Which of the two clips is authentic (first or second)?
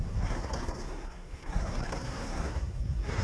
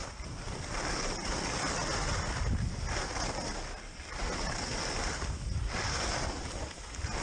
second